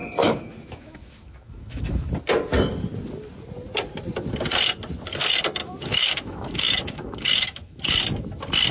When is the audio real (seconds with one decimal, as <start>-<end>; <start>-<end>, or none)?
2.1-5.6; 7.8-8.7

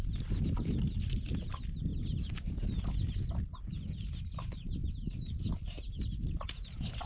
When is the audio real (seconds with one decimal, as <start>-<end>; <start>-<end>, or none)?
0.0-7.1

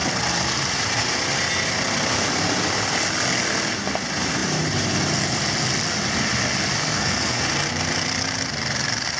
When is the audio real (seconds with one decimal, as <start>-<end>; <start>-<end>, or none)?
0.0-6.8; 7.4-9.2

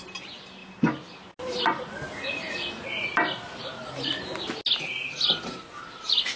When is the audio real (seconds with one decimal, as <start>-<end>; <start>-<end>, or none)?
0.0-6.4

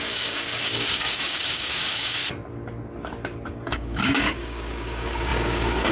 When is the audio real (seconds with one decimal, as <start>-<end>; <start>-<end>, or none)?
2.2-3.5

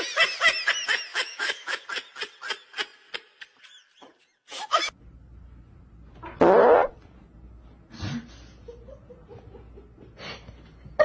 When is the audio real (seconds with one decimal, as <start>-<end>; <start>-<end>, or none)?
0.0-1.1; 1.8-11.0

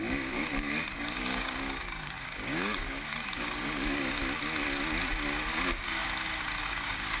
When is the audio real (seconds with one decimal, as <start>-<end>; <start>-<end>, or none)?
4.2-5.4; 6.0-6.6